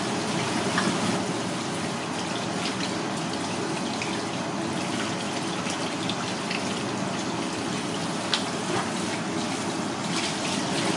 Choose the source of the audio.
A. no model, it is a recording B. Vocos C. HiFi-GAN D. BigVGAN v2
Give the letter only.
A